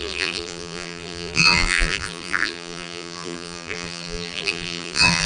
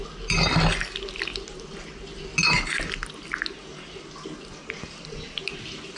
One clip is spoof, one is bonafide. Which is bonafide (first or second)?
second